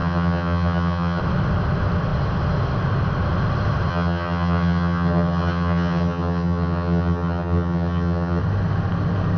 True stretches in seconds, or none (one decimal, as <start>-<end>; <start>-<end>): 1.2-3.9; 8.4-9.4